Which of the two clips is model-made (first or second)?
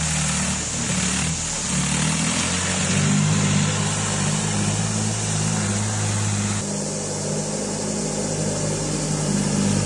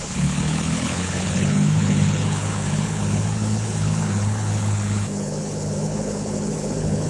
second